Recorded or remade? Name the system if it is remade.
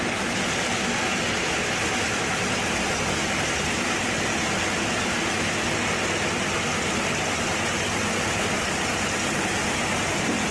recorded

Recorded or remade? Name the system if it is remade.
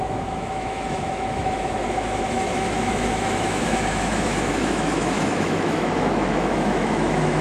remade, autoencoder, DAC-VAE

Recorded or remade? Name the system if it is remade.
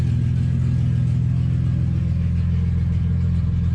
recorded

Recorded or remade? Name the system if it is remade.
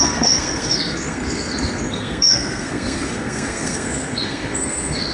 remade, codec, SNAC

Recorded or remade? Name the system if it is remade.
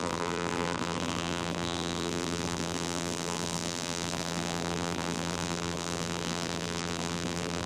remade, vocoder, BigVGAN v2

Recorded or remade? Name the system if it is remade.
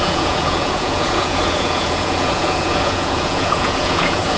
remade, vocoder, Vocos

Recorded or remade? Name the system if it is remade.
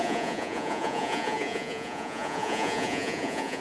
remade, vocoder, Vocos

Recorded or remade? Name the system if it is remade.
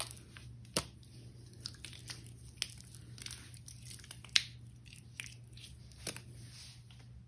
recorded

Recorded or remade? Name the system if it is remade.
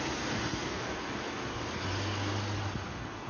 recorded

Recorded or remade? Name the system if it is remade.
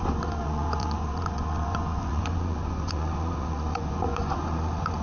remade, vocoder, Vocos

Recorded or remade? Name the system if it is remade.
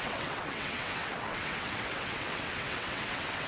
remade, vocoder, WaveNeXt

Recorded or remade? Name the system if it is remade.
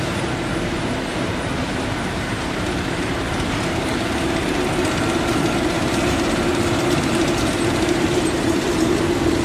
remade, vocoder, BigVGAN v2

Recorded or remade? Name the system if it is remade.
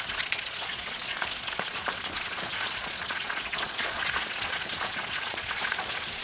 remade, vocoder, Vocos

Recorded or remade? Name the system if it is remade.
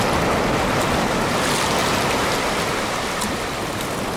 recorded